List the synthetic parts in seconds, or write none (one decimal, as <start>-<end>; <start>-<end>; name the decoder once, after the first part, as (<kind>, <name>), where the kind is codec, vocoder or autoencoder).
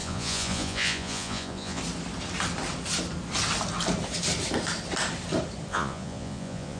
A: 0.0-1.8 (vocoder, Vocos); 5.7-6.8